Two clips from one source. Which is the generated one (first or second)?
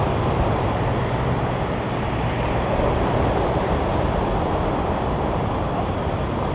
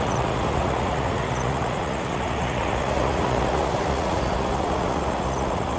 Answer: second